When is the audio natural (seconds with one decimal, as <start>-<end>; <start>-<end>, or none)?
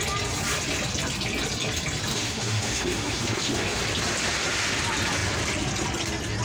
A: 0.0-2.1; 3.8-6.4